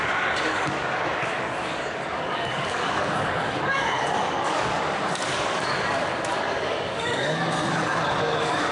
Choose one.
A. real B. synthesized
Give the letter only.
B